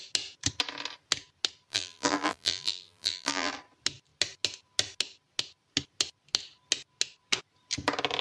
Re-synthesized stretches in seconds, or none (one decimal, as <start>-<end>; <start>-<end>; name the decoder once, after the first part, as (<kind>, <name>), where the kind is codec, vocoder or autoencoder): 1.7-3.5 (vocoder, BigVGAN v2)